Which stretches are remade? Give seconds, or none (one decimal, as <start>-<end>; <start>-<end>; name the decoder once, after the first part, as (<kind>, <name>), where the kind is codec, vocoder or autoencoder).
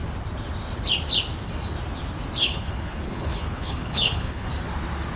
2.4-4.5 (codec, HILCodec)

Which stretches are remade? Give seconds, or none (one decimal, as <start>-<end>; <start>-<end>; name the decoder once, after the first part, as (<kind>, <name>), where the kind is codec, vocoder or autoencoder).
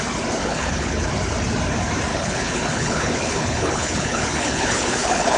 0.4-1.1 (codec, HILCodec); 2.1-5.4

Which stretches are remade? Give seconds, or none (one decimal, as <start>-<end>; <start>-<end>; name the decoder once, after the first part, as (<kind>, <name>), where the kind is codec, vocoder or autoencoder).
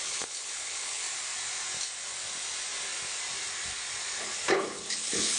0.0-1.0 (codec, HILCodec); 4.2-5.4